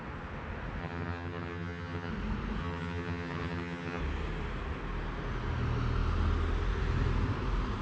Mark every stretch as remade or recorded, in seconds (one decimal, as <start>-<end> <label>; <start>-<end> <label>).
0.0-0.8 recorded; 0.8-2.1 remade; 2.1-2.6 recorded; 2.6-4.0 remade; 4.0-7.8 recorded